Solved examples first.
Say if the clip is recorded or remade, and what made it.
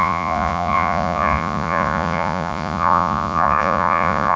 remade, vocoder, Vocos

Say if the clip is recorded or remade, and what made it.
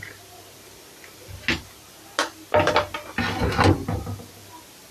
recorded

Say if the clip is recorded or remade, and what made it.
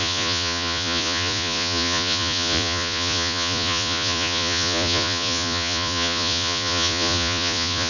remade, vocoder, Vocos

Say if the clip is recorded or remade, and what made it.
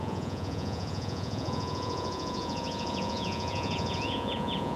remade, vocoder, Vocos